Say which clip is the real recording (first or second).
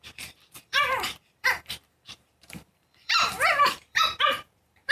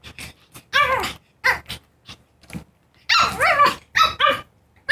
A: second